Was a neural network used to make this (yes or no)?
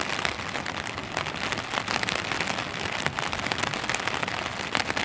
no